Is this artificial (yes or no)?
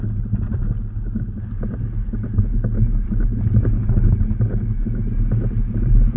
no